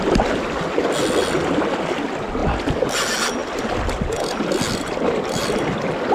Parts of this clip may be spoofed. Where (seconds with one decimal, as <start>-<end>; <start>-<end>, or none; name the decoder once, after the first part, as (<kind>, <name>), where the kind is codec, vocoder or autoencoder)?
none